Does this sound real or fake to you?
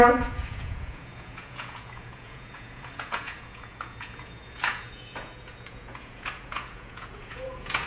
fake